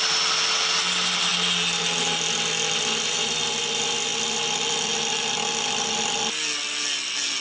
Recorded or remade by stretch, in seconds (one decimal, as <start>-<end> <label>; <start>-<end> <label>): 0.0-7.4 recorded